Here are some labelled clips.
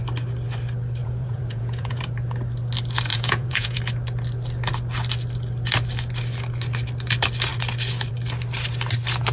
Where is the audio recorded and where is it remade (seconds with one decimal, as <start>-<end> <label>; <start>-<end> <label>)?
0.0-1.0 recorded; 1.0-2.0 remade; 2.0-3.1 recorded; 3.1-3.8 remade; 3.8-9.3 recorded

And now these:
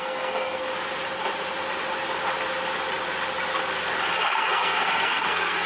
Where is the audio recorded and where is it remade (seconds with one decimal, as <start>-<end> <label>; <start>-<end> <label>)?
0.0-0.7 remade; 0.7-4.1 recorded; 4.1-5.7 remade

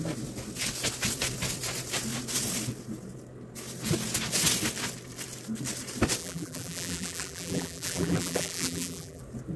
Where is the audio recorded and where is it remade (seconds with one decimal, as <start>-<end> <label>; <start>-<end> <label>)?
0.0-6.2 recorded; 6.2-9.2 remade; 9.2-9.6 recorded

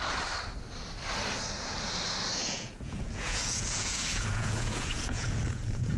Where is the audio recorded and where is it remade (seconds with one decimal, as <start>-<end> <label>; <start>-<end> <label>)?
0.0-2.4 recorded; 2.4-6.0 remade